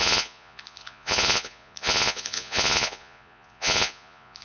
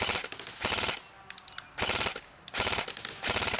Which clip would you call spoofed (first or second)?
first